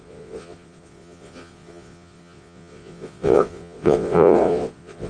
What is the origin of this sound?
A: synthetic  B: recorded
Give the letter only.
A